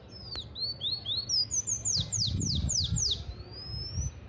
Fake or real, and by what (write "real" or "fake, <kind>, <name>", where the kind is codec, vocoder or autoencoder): real